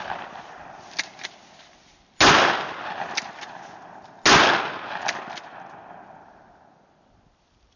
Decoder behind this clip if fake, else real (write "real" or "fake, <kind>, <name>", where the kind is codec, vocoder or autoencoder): real